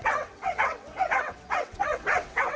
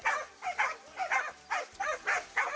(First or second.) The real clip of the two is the second